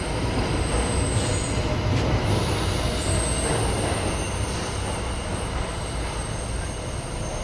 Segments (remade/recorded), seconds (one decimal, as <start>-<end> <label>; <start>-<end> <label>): 0.0-7.4 recorded